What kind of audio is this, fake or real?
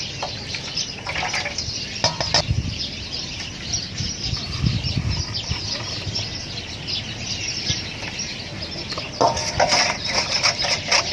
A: real